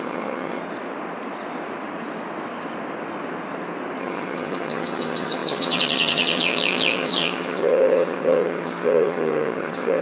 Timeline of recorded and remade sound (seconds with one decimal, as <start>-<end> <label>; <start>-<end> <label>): 0.0-0.6 remade; 0.6-4.0 recorded; 4.0-10.0 remade